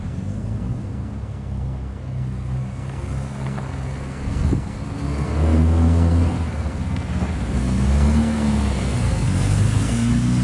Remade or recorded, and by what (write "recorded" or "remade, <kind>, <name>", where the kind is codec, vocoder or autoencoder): remade, codec, SNAC